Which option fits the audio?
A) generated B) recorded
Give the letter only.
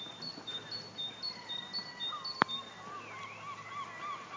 B